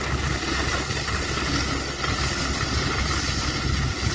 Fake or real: real